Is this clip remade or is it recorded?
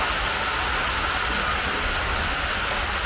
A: recorded